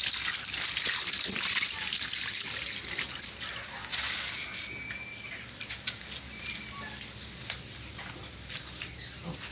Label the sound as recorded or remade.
recorded